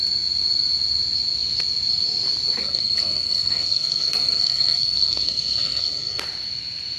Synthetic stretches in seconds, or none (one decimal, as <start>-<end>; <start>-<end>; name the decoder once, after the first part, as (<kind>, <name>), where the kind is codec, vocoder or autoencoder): 2.6-6.2 (codec, SNAC)